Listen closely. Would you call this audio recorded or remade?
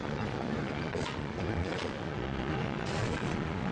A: remade